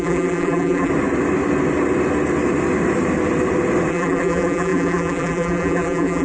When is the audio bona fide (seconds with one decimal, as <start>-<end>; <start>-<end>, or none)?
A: 0.9-3.9